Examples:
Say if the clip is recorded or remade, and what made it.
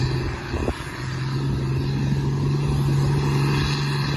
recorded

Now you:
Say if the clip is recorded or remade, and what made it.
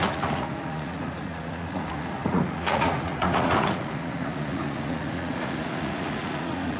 remade, vocoder, Vocos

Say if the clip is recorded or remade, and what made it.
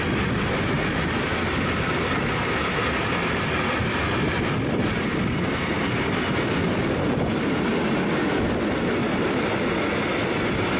recorded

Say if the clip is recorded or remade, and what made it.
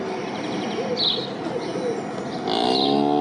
recorded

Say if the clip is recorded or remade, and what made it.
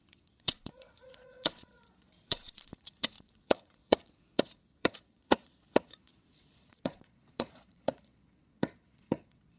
remade, vocoder, Vocos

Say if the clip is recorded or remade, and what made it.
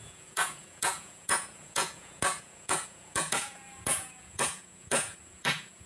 remade, vocoder, Vocos